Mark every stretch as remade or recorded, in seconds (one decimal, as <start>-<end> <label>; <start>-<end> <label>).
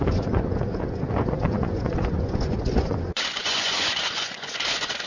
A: 0.0-5.1 remade